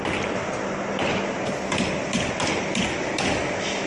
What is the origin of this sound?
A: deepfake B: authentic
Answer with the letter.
B